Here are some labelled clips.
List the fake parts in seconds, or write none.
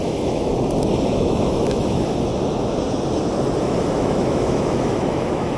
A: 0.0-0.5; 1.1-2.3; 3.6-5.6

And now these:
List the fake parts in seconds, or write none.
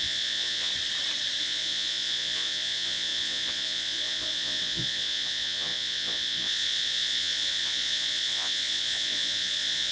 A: 0.0-0.7; 1.4-9.9